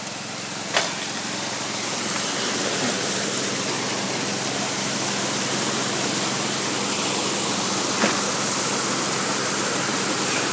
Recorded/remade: recorded